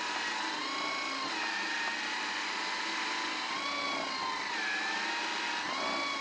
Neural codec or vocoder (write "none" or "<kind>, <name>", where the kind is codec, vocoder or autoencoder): none